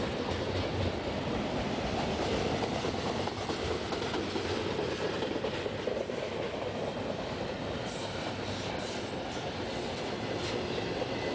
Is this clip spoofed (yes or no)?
no